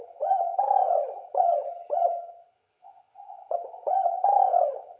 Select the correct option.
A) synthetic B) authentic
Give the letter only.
A